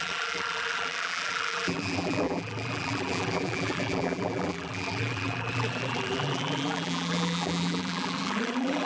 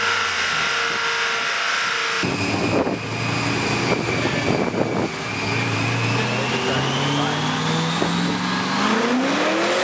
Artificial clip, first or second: first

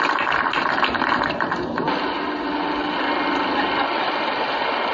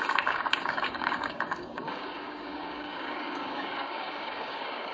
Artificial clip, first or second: second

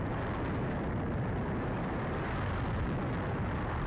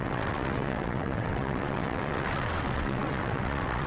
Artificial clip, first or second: second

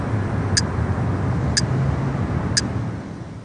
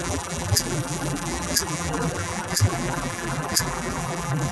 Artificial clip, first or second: second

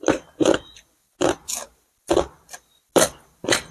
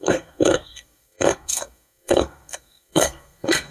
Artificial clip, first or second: second